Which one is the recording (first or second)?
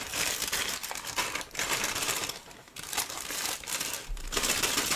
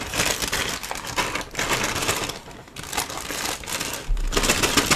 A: second